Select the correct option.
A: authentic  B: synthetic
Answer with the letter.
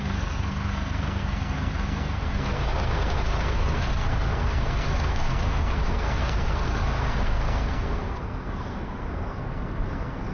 B